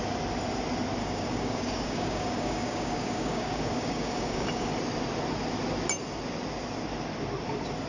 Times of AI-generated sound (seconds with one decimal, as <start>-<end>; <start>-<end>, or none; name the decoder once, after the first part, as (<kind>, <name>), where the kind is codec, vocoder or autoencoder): 1.0-4.7 (codec, DAC)